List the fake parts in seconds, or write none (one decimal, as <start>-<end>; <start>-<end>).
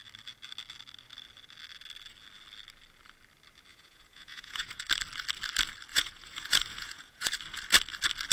3.7-4.8; 5.9-7.3